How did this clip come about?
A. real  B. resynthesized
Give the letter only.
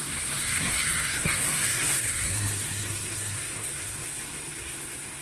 B